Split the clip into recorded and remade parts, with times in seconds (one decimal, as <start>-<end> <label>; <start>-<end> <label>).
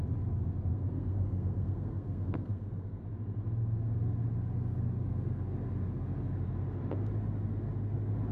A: 0.0-0.7 recorded; 0.7-3.0 remade; 3.0-8.3 recorded